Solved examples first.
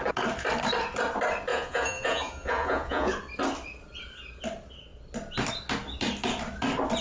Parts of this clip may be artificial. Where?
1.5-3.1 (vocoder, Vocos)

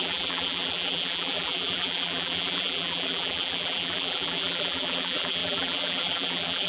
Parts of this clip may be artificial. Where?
0.0-6.7 (vocoder, BigVGAN v2)

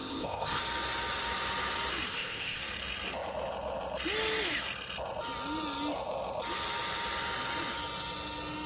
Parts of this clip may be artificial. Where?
0.0-0.6 (codec, ZipCodec); 2.1-2.6

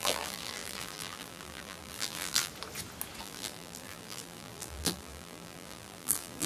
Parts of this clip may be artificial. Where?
0.0-2.5 (vocoder, BigVGAN v2); 3.2-6.5

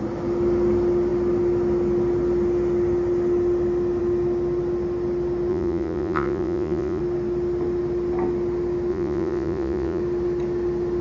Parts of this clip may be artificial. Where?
5.5-7.0 (vocoder, Vocos); 8.9-10.0